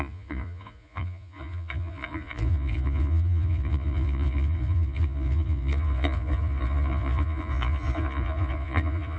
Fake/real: fake